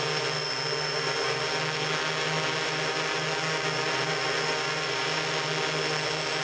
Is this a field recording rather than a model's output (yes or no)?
yes